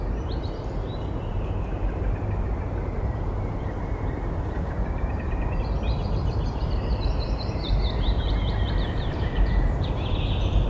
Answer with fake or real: fake